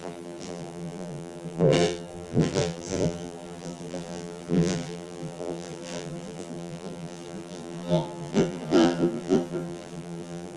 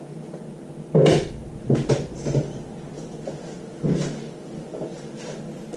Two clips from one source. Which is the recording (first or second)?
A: second